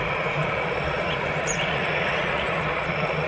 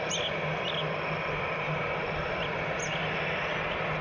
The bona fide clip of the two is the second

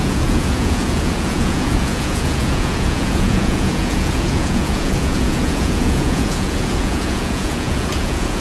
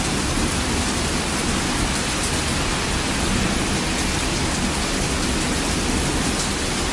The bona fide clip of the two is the second